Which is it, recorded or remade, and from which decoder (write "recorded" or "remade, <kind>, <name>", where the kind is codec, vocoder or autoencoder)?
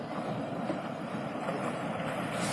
recorded